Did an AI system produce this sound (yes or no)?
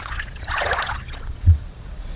yes